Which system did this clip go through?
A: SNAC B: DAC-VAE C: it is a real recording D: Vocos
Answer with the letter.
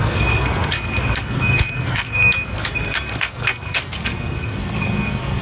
A